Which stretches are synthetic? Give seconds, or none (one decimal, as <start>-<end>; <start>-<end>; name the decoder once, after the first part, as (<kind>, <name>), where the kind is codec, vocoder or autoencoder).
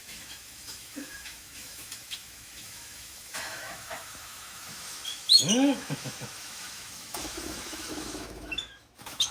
0.0-9.3 (autoencoder, DAC-VAE)